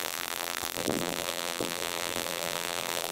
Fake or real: fake